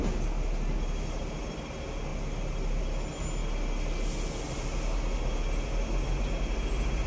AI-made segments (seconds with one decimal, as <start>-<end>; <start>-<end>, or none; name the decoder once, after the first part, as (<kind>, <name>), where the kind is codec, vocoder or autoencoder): 2.1-2.8 (vocoder, BigVGAN v2)